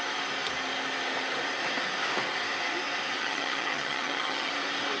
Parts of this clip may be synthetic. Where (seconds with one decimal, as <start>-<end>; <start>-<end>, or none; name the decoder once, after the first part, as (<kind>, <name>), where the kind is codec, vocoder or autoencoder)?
3.2-4.5 (vocoder, HiFi-GAN)